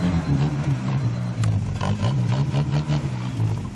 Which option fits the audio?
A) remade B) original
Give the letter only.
A